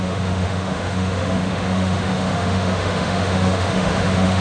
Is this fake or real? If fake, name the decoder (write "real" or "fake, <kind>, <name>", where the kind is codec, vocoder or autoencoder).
fake, autoencoder, DAC-VAE